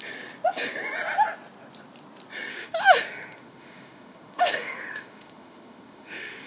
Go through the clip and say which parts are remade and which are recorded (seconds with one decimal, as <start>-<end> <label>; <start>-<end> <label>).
0.0-2.5 recorded; 2.5-6.5 remade